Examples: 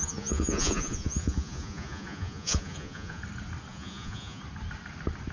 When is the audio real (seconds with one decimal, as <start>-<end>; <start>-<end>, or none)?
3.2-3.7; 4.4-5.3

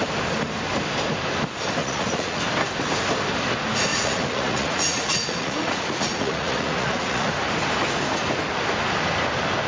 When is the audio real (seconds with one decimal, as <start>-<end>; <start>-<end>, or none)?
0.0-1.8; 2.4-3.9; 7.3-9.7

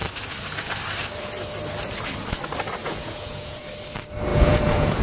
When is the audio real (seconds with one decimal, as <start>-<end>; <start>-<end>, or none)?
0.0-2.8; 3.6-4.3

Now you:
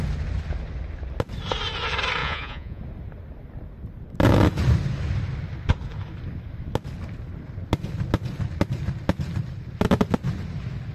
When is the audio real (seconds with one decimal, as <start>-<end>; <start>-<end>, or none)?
0.0-2.2; 2.8-10.9

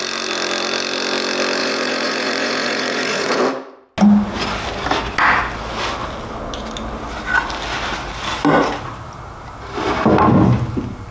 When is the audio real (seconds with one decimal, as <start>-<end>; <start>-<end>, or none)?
0.0-1.6; 3.4-11.1

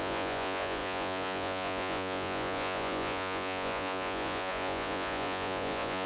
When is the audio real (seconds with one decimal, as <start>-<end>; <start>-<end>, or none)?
none

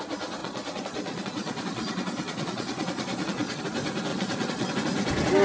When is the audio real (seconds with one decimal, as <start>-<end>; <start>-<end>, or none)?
0.0-0.4; 3.6-4.1; 4.7-5.4

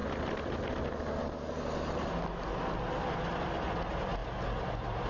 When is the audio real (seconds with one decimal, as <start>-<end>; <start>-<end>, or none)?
0.0-5.1